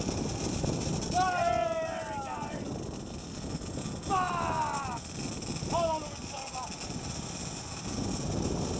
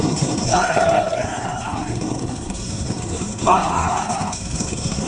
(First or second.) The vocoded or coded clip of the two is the second